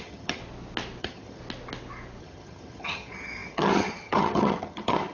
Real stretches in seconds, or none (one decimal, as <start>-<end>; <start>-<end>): 0.4-1.0; 1.4-2.2